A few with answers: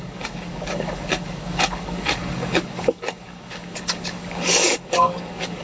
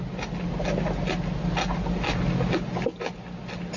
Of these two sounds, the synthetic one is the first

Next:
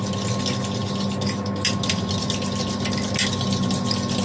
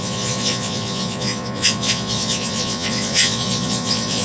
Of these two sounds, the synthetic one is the second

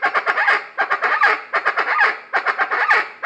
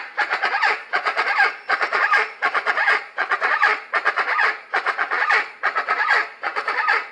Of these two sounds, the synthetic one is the second